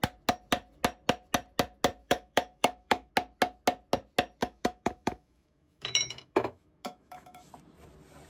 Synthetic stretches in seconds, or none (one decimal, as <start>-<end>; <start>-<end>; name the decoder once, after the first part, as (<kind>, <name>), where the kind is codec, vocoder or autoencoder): 2.0-3.1 (autoencoder, DAC-VAE); 4.4-7.5